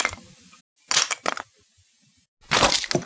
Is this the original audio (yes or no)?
yes